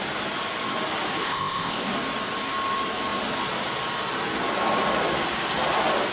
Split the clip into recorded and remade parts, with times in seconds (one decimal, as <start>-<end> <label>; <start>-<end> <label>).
0.0-1.2 recorded; 1.2-1.9 remade; 1.9-6.1 recorded